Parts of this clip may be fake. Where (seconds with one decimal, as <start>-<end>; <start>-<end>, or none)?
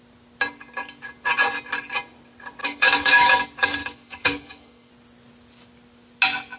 2.6-3.4; 3.8-4.9